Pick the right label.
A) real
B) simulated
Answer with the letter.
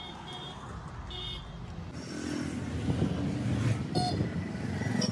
A